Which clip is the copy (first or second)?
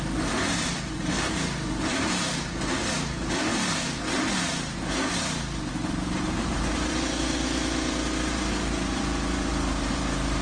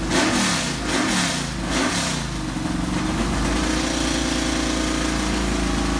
first